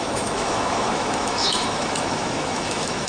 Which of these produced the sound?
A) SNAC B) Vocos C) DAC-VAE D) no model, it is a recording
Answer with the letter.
C